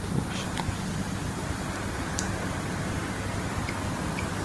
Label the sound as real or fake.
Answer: real